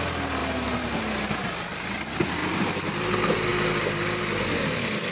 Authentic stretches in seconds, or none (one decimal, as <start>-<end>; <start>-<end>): 0.0-0.4; 1.0-2.4; 2.9-5.1